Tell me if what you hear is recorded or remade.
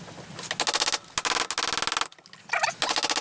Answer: recorded